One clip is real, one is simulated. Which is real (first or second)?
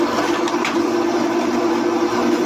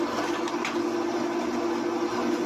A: second